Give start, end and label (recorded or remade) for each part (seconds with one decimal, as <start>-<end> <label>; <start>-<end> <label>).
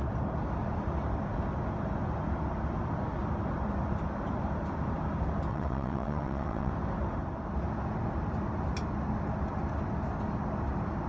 0.0-5.5 recorded; 5.5-6.7 remade; 6.7-11.1 recorded